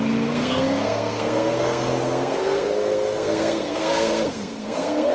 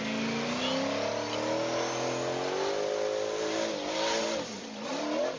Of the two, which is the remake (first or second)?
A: first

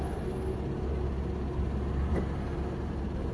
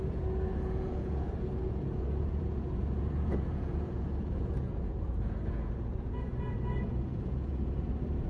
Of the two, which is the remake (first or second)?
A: second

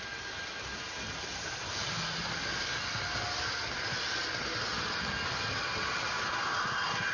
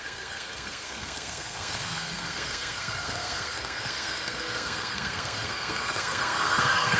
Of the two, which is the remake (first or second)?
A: second